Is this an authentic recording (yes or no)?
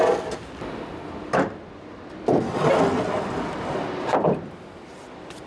yes